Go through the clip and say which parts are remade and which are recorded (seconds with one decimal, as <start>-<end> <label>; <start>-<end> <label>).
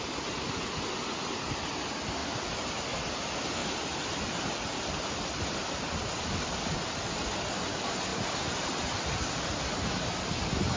0.0-2.2 recorded; 2.2-2.8 remade; 2.8-3.6 recorded; 3.6-6.9 remade; 6.9-8.1 recorded; 8.1-9.9 remade; 9.9-10.8 recorded